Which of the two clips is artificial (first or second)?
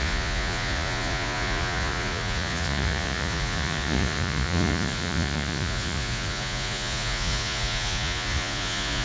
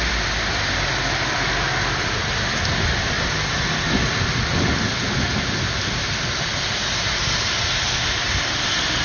first